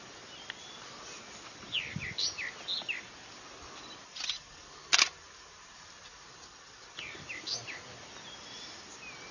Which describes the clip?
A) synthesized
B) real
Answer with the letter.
B